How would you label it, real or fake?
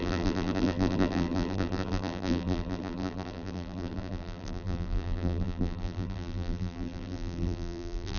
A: fake